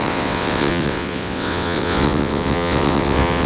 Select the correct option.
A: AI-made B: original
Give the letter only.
A